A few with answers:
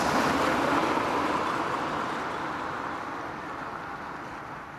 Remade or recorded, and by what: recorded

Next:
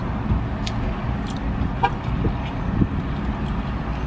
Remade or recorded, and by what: recorded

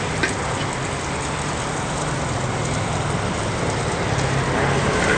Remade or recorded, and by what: recorded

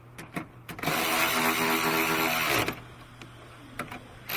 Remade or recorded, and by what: recorded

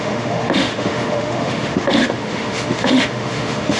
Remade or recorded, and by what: remade, autoencoder, DAC-VAE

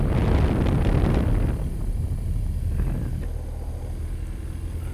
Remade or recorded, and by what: recorded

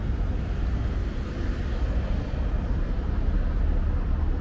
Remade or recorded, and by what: recorded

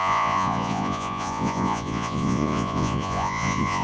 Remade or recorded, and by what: remade, vocoder, Vocos